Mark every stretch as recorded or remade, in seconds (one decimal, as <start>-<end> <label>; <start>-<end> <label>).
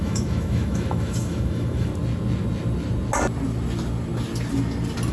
0.0-1.9 remade; 1.9-5.1 recorded